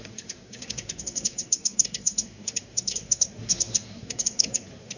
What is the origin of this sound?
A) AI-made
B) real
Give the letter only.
A